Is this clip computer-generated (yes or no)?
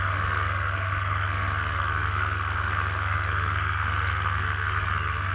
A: yes